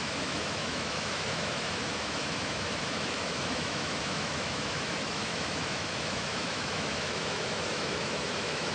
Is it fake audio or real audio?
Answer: fake